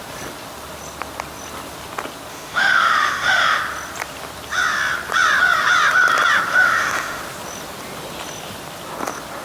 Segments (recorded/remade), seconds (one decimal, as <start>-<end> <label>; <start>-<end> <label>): 0.0-2.3 recorded; 2.3-3.6 remade; 3.6-6.5 recorded; 6.5-7.2 remade; 7.2-9.4 recorded